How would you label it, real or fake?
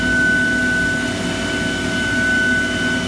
real